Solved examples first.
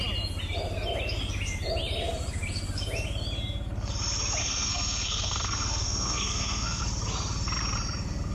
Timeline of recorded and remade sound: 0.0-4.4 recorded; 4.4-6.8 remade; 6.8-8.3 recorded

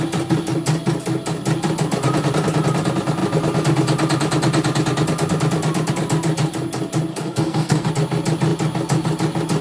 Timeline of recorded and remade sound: 0.0-7.1 recorded; 7.1-7.9 remade; 7.9-9.6 recorded